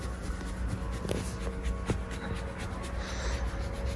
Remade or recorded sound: recorded